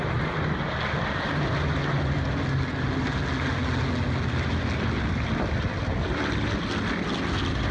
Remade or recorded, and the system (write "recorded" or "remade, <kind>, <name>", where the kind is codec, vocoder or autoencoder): recorded